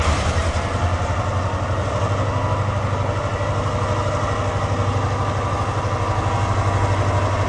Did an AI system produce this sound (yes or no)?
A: no